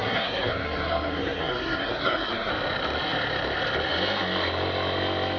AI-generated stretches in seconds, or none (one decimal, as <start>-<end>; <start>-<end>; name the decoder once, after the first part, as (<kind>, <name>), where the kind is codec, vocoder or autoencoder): 0.0-2.5 (codec, SNAC)